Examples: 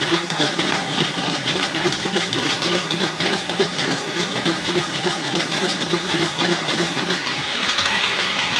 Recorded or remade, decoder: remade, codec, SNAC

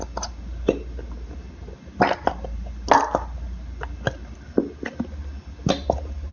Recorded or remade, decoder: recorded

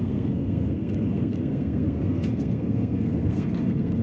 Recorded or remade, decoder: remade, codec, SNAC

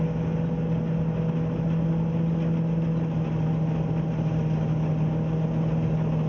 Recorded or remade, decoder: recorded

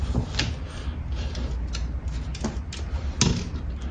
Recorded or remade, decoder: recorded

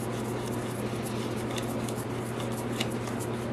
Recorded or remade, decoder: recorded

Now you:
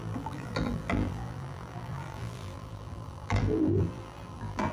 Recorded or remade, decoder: remade, vocoder, BigVGAN v2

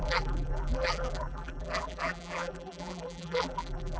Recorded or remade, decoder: remade, vocoder, BigVGAN v2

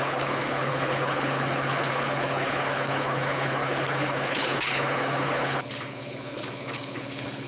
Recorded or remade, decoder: remade, codec, HILCodec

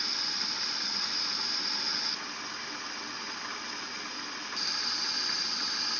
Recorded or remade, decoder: recorded